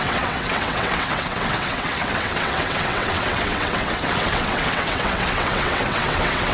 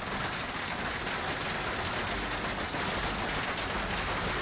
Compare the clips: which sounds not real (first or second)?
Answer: first